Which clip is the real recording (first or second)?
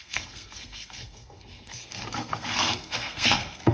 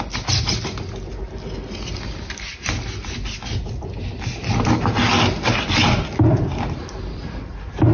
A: second